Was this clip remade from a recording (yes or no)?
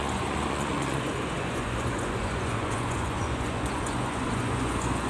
yes